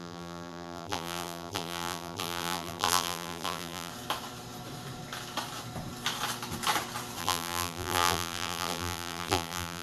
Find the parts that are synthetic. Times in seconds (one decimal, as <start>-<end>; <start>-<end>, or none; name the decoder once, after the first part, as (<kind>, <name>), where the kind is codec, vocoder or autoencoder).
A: 0.0-3.9 (vocoder, BigVGAN v2); 7.2-9.8